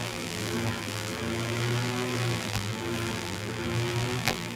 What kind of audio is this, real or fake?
fake